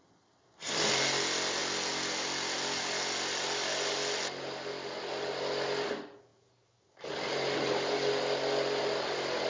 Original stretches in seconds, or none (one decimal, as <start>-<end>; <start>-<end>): 0.0-9.5